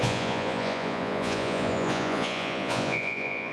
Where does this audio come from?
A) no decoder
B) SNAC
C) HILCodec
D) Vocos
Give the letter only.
D